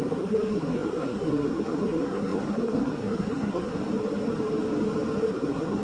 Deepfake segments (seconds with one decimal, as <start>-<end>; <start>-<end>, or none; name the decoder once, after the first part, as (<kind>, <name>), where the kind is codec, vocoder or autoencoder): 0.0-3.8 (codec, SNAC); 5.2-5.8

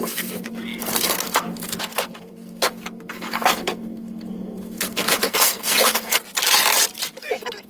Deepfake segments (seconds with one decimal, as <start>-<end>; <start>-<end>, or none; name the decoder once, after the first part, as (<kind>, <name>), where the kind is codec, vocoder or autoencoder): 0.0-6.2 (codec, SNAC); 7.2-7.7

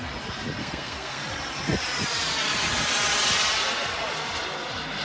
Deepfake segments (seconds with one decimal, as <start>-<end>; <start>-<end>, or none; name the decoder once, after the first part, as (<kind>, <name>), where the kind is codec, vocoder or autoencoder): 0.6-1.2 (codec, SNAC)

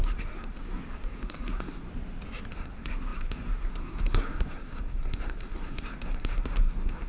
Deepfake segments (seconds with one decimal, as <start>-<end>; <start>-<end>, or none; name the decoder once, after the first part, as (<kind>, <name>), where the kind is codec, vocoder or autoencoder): 0.0-1.9 (codec, SNAC); 2.5-7.1

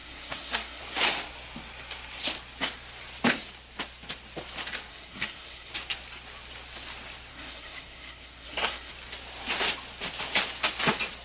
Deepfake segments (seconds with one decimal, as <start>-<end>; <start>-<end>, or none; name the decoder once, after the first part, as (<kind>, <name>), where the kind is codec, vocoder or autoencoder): 0.0-0.8 (codec, SNAC); 4.9-5.7; 7.3-8.9

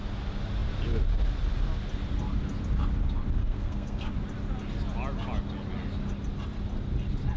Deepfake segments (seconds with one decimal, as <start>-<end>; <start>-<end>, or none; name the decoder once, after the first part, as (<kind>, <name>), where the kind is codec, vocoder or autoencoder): 3.4-4.1 (codec, SNAC)